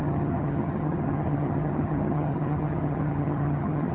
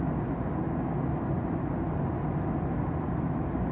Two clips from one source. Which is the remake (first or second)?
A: first